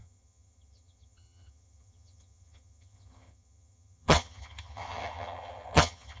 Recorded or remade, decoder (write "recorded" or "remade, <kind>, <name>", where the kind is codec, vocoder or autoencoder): remade, vocoder, HiFi-GAN